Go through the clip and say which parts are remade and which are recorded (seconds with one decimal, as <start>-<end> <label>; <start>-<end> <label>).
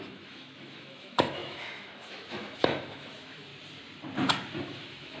0.0-3.5 remade; 3.5-4.6 recorded; 4.6-5.2 remade